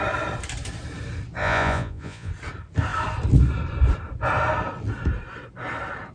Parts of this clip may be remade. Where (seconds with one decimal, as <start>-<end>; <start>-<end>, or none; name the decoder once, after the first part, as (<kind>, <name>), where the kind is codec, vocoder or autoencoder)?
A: 1.4-2.3 (vocoder, Vocos)